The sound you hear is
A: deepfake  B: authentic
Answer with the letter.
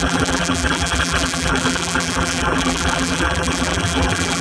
A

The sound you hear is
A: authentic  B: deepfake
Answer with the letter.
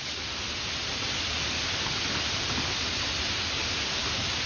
A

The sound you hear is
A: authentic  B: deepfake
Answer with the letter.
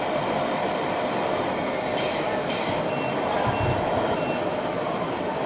A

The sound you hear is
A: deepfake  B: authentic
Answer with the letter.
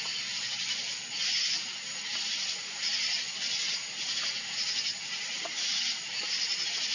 B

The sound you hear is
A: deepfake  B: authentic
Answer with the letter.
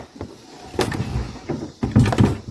B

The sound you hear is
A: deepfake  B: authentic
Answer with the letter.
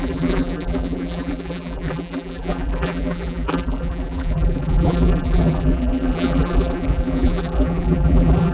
A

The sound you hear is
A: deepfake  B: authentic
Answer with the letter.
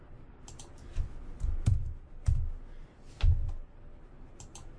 B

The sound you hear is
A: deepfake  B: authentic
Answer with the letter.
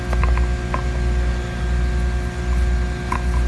B